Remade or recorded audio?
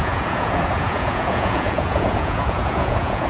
remade